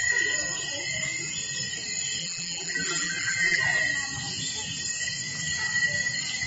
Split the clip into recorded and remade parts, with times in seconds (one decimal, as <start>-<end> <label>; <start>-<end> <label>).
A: 0.0-2.2 recorded; 2.2-3.6 remade; 3.6-6.5 recorded